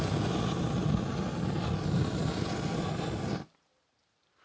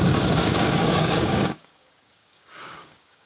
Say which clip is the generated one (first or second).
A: second